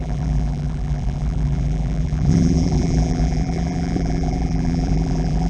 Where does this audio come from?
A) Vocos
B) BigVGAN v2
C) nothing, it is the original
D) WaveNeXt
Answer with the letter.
B